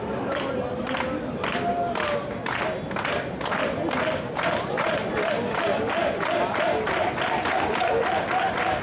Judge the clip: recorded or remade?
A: recorded